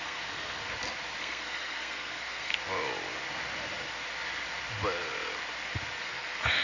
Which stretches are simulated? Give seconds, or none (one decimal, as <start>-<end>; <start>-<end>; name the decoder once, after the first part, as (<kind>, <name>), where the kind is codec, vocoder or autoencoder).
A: 0.0-0.6 (codec, SNAC); 1.2-2.5; 6.0-6.6